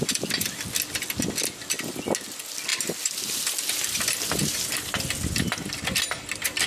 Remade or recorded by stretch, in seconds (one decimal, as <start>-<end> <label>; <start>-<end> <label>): 0.0-6.7 recorded